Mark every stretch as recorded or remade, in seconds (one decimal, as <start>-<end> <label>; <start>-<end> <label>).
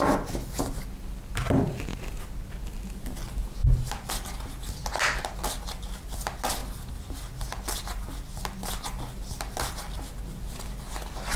0.0-11.4 recorded